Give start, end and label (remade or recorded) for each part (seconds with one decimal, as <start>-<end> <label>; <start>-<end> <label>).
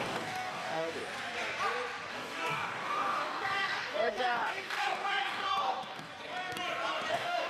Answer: 0.0-1.0 remade; 1.0-2.1 recorded; 2.1-6.1 remade; 6.1-7.1 recorded; 7.1-7.5 remade